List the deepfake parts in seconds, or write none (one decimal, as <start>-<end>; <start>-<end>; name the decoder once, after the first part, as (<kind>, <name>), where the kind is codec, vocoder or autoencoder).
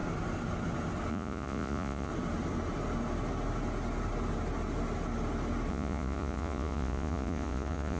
1.1-2.1 (vocoder, Vocos); 5.7-8.0